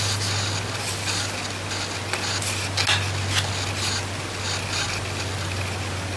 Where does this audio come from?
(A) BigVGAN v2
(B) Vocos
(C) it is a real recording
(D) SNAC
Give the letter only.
C